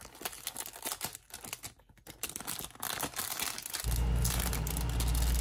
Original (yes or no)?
yes